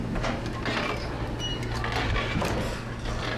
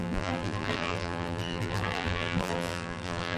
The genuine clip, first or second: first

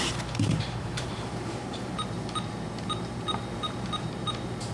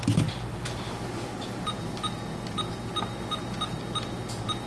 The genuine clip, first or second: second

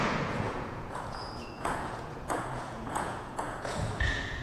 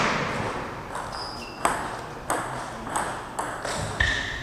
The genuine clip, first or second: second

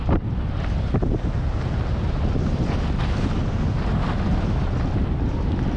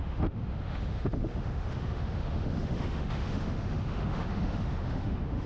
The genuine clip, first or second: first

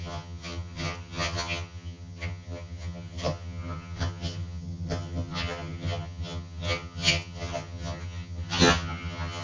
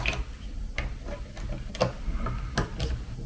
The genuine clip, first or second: second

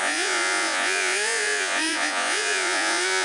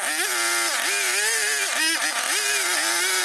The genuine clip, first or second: second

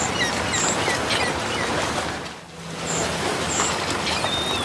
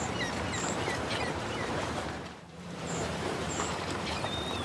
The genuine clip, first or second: first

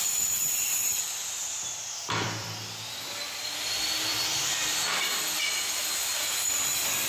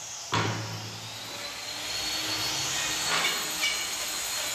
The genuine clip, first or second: second